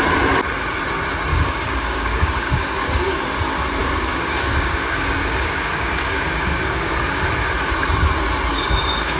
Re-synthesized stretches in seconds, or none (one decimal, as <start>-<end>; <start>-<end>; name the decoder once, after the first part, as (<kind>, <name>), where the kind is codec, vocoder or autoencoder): 1.3-3.2 (codec, DAC); 3.8-7.2; 8.5-9.2